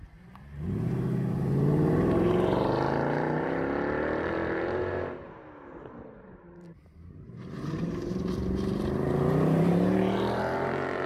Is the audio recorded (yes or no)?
no